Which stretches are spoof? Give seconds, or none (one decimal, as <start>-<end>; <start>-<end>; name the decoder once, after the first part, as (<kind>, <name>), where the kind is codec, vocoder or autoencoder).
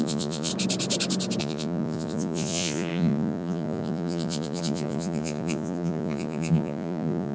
0.0-0.5 (vocoder, Vocos); 1.4-7.3